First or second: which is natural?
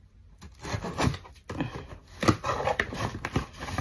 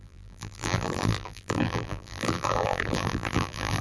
first